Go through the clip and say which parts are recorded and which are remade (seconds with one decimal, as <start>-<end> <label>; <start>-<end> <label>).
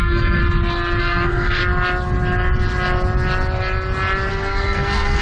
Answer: 0.0-0.4 remade; 0.4-1.0 recorded; 1.0-1.6 remade; 1.6-4.3 recorded; 4.3-5.2 remade